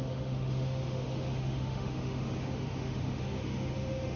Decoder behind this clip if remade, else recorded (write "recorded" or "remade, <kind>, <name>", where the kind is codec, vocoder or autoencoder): remade, autoencoder, DAC-VAE